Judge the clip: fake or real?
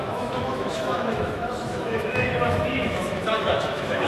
fake